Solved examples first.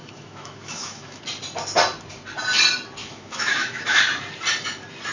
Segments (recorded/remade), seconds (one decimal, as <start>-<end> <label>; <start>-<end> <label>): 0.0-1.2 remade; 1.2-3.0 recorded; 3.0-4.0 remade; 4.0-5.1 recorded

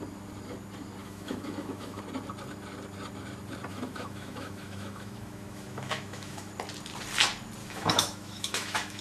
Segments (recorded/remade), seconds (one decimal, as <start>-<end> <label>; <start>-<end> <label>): 0.0-1.0 recorded; 1.0-2.0 remade; 2.0-3.7 recorded; 3.7-6.5 remade; 6.5-7.6 recorded; 7.6-9.0 remade

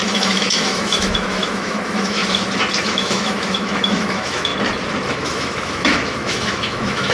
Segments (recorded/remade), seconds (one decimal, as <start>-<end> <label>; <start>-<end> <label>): 0.0-2.2 remade; 2.2-2.8 recorded; 2.8-4.5 remade; 4.5-5.1 recorded; 5.1-7.1 remade

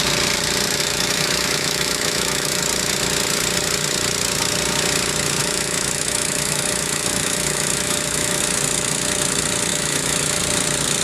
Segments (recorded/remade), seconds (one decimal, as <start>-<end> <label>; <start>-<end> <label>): 0.0-0.8 recorded; 0.8-2.6 remade; 2.6-5.4 recorded; 5.4-8.4 remade; 8.4-9.7 recorded; 9.7-10.4 remade; 10.4-11.0 recorded

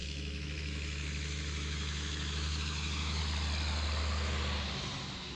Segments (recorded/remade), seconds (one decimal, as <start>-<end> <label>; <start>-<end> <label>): 0.0-3.2 remade; 3.2-5.4 recorded